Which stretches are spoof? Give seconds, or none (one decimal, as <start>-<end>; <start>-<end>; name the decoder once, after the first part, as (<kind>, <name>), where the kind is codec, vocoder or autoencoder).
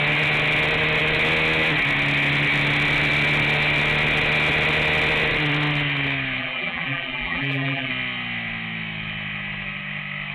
6.4-7.9 (vocoder, BigVGAN v2)